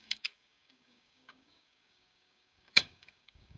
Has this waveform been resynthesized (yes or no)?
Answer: yes